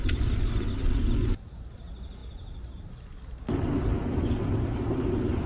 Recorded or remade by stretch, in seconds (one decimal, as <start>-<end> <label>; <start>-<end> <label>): 0.0-5.5 recorded